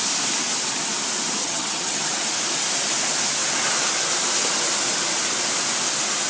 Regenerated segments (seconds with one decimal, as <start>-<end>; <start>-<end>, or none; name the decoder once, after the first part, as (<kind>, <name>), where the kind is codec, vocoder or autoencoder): 1.4-2.1 (vocoder, HiFi-GAN)